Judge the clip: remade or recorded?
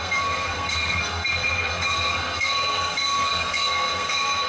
remade